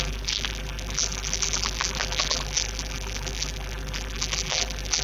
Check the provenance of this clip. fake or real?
fake